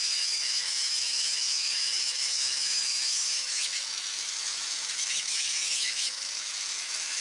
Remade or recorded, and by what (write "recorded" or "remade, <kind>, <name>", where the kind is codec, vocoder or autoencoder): remade, autoencoder, DAC-VAE